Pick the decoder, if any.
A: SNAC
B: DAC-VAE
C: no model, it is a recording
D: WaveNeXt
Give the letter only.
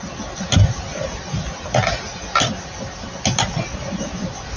C